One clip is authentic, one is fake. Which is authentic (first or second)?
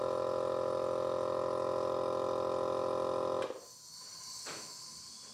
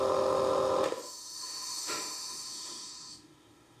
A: first